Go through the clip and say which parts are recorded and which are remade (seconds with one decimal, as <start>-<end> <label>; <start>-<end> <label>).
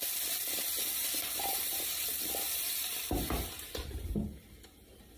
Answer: 0.0-1.0 recorded; 1.0-4.1 remade; 4.1-5.2 recorded